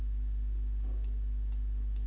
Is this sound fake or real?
real